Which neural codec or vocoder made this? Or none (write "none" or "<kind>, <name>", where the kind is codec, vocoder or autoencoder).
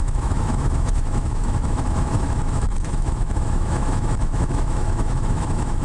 autoencoder, DAC-VAE